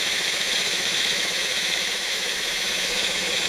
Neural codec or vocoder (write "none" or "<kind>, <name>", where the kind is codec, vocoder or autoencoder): autoencoder, DAC-VAE